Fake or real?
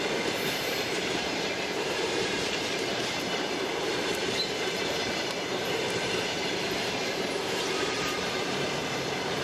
fake